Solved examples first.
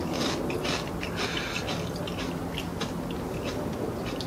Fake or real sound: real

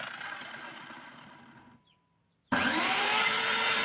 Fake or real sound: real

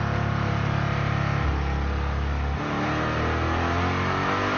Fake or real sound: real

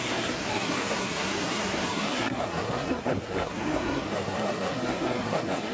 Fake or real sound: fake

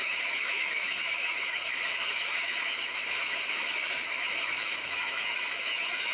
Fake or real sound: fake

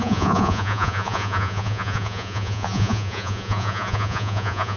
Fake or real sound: fake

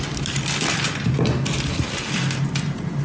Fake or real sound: real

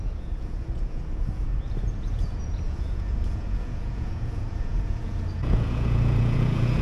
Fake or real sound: fake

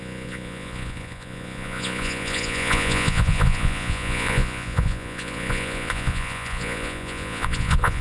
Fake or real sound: fake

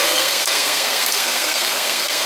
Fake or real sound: fake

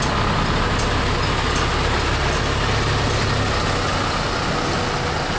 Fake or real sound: real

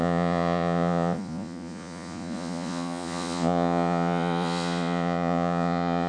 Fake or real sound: fake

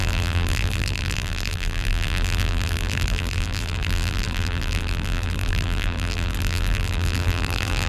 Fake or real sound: fake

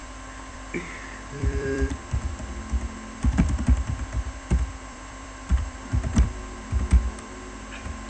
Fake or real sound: fake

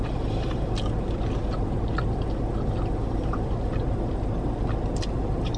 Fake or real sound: real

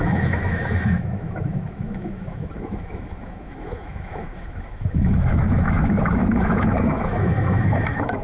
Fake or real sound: fake